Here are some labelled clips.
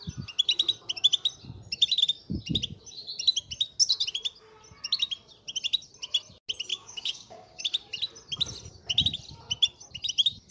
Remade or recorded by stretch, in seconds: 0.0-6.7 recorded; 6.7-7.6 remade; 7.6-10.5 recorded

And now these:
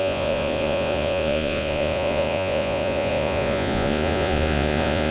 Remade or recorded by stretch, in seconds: 0.0-5.1 remade

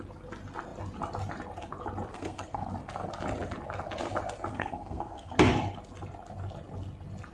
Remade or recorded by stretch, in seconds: 0.0-2.1 recorded; 2.1-2.7 remade; 2.7-4.5 recorded; 4.5-5.3 remade; 5.3-7.3 recorded

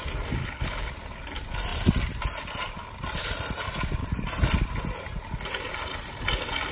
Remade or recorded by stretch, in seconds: 0.0-0.4 recorded; 0.4-0.9 remade; 0.9-6.7 recorded

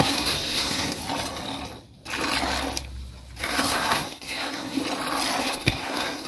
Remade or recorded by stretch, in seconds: 0.0-1.0 remade; 1.0-3.4 recorded; 3.4-4.8 remade; 4.8-5.4 recorded; 5.4-6.3 remade

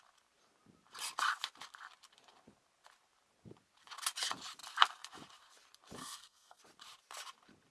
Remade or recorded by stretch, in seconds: 0.0-6.0 recorded; 6.0-6.6 remade; 6.6-7.7 recorded